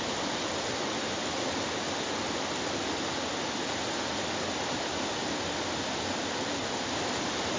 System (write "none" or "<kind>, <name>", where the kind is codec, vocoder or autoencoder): none